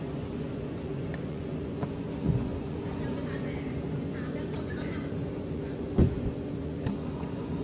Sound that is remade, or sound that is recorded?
remade